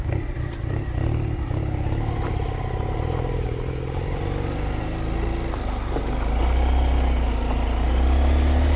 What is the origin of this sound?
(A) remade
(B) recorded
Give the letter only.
B